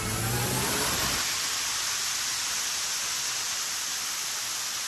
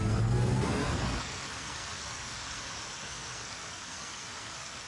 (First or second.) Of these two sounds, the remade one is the second